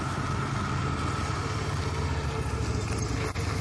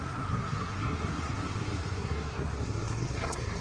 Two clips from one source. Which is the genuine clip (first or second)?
first